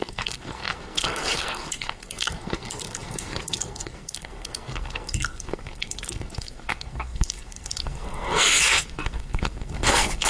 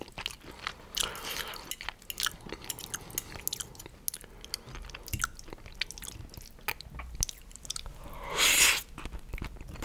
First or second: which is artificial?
first